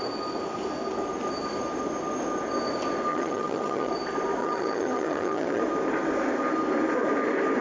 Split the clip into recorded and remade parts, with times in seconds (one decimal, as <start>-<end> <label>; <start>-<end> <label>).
0.0-3.1 recorded; 3.1-3.9 remade; 3.9-4.4 recorded; 4.4-5.6 remade; 5.6-7.6 recorded